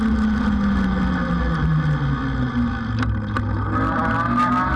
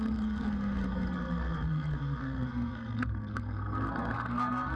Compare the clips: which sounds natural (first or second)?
first